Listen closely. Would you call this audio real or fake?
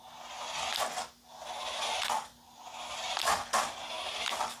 real